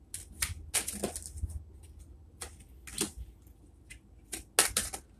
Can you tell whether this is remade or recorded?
recorded